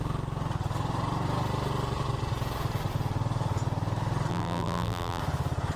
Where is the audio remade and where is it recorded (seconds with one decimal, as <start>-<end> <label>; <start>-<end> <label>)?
0.0-4.3 recorded; 4.3-5.2 remade; 5.2-5.8 recorded